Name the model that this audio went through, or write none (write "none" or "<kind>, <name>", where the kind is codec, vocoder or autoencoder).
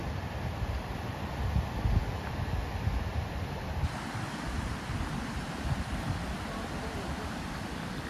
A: none